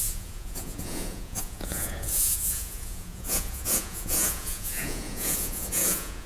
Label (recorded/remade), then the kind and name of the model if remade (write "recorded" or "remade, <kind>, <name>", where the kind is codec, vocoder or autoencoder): remade, vocoder, Vocos